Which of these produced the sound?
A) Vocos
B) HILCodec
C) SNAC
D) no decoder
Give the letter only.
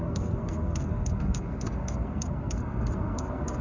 C